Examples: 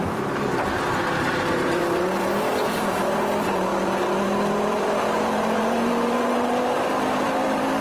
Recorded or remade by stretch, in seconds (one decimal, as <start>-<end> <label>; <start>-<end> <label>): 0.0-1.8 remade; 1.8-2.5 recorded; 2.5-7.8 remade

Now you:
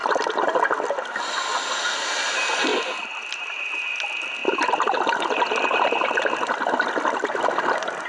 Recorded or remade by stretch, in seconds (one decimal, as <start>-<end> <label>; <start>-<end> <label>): 0.0-2.7 recorded; 2.7-3.6 remade; 3.6-8.1 recorded

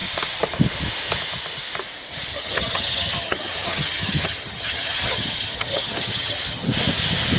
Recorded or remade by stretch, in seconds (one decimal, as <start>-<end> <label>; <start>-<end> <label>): 0.0-2.3 recorded; 2.3-6.7 remade; 6.7-7.4 recorded

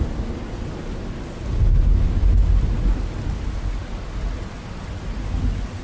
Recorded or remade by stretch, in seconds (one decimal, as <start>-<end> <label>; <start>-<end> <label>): 0.0-5.8 recorded